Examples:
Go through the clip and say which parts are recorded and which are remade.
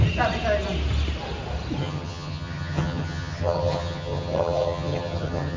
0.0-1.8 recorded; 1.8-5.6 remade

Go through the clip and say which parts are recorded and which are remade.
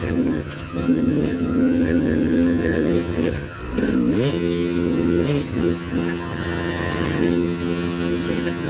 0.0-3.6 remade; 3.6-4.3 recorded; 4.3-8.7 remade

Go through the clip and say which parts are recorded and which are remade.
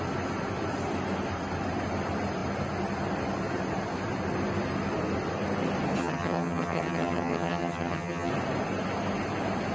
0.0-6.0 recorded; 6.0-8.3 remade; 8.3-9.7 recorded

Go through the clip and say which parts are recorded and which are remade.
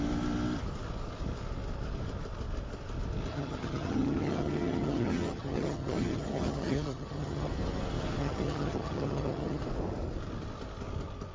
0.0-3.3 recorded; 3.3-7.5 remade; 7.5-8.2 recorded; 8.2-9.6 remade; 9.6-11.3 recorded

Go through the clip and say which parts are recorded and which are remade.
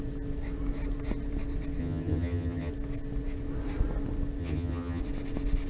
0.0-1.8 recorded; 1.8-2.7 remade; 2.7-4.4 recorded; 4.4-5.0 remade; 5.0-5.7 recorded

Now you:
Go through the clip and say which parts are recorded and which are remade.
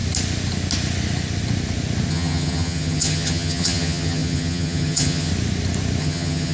0.0-2.1 recorded; 2.1-5.3 remade; 5.3-6.0 recorded; 6.0-6.5 remade